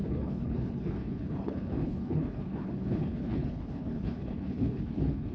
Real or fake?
fake